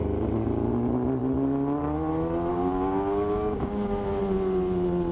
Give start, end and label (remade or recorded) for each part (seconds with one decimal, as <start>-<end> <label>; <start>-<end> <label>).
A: 0.0-2.5 recorded; 2.5-4.2 remade; 4.2-5.1 recorded